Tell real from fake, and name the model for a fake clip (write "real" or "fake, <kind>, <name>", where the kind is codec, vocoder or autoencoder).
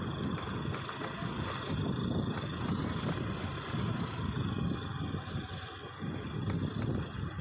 real